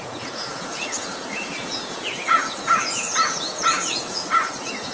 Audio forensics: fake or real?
fake